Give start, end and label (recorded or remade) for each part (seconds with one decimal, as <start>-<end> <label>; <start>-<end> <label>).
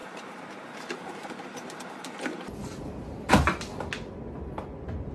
0.0-2.5 remade; 2.5-5.1 recorded